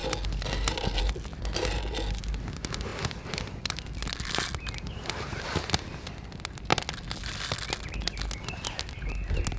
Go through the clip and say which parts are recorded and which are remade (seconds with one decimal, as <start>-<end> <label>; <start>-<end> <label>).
0.0-9.6 recorded